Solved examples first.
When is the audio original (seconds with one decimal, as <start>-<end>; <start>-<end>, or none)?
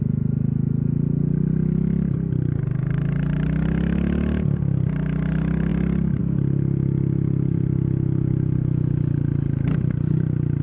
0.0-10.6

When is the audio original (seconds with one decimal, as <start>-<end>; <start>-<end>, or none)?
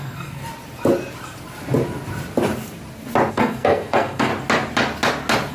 0.4-3.3; 4.3-5.5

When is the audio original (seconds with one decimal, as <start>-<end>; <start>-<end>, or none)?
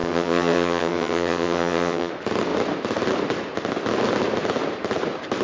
2.1-5.4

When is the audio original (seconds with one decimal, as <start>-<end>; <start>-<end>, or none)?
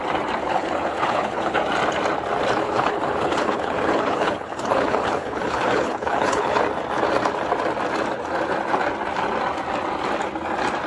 0.0-0.4; 1.6-2.6; 6.6-10.9